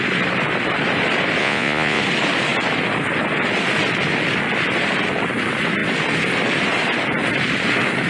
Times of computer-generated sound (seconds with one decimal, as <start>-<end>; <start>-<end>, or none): 1.4-2.0